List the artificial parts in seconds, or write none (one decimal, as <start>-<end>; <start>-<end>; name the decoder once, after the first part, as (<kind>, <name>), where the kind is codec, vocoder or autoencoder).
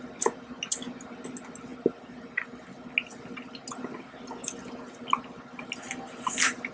none